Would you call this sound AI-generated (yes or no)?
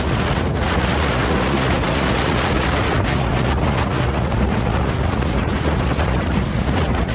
yes